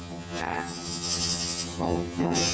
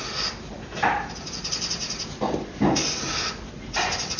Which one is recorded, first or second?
second